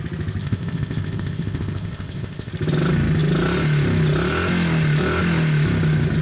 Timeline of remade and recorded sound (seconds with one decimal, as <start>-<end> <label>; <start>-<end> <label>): 0.0-0.4 recorded; 0.4-2.5 remade; 2.5-6.2 recorded